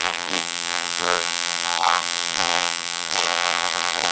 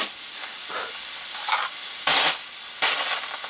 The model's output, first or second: first